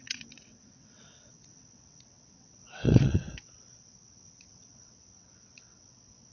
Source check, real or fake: fake